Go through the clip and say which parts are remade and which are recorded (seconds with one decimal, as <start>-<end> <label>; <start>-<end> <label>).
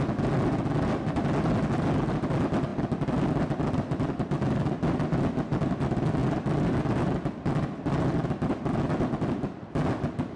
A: 0.0-10.4 recorded